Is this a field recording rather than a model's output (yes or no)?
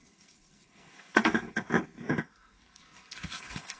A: no